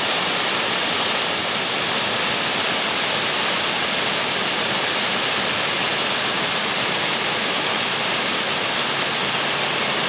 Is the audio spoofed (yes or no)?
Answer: no